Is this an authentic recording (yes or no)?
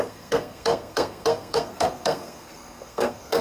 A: no